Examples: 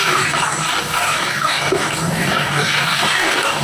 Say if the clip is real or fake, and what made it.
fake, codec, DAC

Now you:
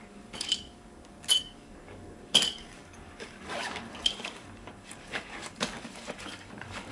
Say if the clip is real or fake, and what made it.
fake, codec, DAC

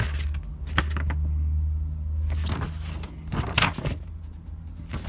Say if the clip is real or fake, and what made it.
real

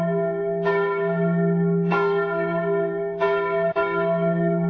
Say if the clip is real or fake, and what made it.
fake, codec, DAC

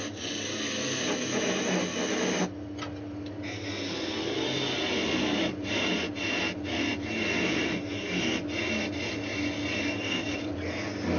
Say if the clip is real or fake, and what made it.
real